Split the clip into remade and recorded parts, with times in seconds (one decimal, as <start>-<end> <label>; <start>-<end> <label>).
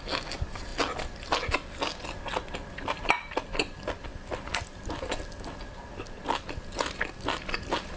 0.0-8.0 recorded